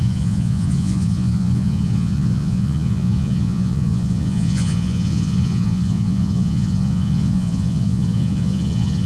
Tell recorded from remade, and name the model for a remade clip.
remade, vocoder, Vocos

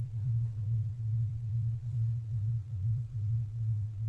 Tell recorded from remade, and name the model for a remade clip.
remade, vocoder, Vocos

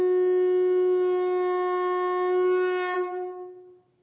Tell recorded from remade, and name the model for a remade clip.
recorded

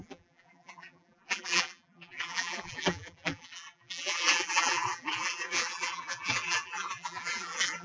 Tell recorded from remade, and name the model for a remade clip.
remade, vocoder, BigVGAN v2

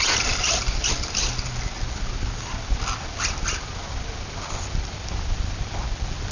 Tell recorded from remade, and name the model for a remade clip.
recorded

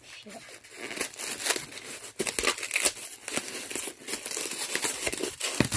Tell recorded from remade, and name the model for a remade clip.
recorded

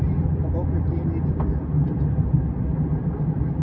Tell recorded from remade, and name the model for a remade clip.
recorded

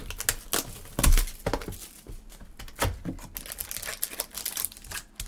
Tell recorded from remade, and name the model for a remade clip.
recorded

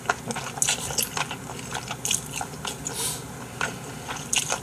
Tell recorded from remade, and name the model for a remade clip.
recorded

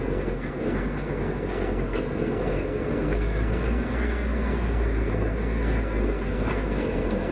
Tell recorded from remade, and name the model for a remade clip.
remade, codec, SNAC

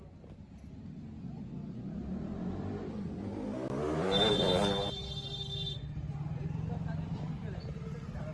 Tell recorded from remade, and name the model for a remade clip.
recorded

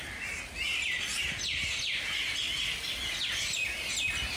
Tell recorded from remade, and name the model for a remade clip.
recorded